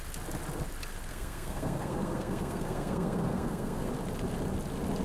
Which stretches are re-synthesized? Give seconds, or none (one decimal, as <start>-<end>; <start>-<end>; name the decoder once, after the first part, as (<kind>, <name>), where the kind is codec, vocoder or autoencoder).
1.1-3.9 (codec, SNAC)